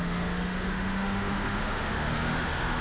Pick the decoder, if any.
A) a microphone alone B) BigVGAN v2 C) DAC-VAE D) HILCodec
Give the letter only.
C